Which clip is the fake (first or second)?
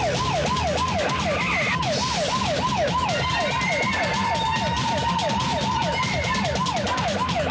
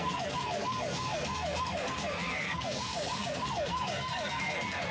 second